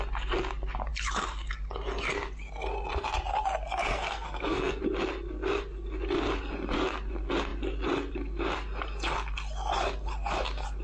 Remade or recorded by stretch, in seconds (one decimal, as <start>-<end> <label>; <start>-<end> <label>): 0.0-3.9 recorded; 3.9-4.8 remade; 4.8-10.8 recorded